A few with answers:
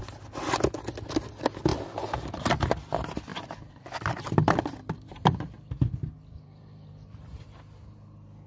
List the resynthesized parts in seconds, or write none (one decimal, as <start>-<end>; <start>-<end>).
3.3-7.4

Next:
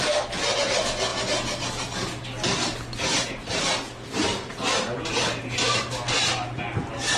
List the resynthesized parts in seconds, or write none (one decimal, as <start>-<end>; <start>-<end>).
none

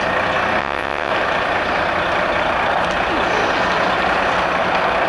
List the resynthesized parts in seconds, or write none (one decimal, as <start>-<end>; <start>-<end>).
0.6-1.1